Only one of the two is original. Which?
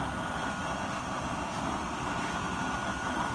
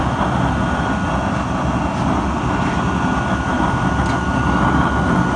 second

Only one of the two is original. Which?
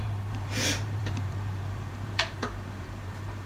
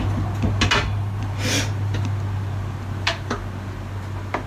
second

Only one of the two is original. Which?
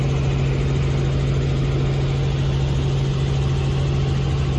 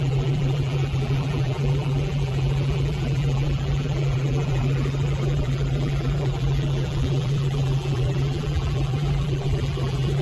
first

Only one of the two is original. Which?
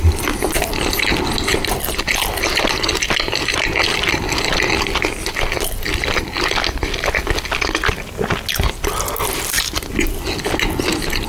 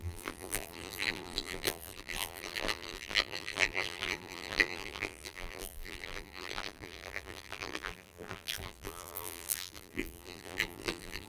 first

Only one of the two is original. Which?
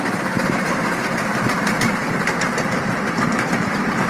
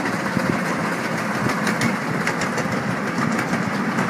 second